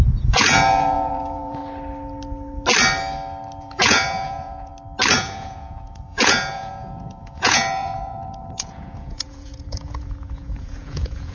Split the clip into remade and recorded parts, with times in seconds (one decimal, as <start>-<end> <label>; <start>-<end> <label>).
0.0-1.6 remade; 1.6-3.6 recorded; 3.6-4.7 remade; 4.7-5.2 recorded; 5.2-11.3 remade